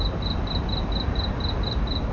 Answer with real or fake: real